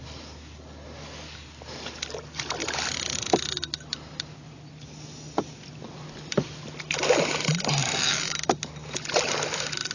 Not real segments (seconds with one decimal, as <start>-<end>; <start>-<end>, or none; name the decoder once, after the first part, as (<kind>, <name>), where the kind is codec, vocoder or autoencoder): 7.8-8.3 (vocoder, BigVGAN v2)